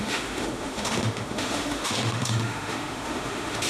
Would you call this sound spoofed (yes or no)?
yes